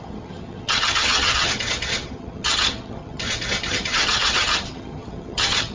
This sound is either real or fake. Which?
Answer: fake